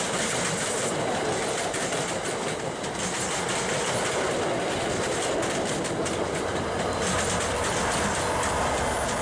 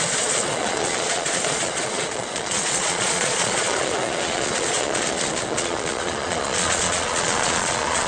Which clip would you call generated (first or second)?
second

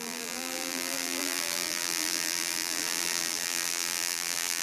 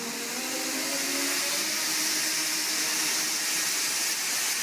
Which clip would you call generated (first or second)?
first